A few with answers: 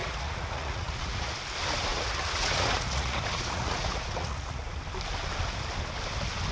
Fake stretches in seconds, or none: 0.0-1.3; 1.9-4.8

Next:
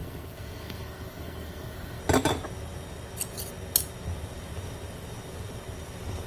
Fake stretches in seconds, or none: 0.0-2.0